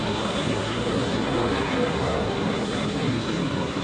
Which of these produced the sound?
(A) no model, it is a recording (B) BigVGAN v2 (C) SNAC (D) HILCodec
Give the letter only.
C